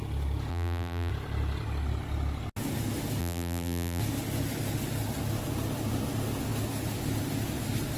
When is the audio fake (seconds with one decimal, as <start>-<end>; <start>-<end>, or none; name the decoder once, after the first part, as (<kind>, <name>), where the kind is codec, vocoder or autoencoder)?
0.5-1.1 (vocoder, BigVGAN v2); 3.2-4.0